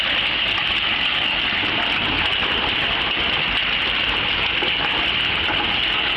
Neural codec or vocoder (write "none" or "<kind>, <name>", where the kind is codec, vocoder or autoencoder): none